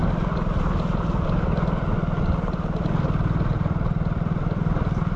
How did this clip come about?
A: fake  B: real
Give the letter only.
B